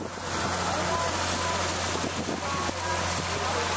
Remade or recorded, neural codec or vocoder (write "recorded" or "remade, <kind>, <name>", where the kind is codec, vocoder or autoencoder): recorded